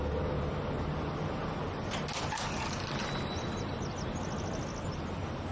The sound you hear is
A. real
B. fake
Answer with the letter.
A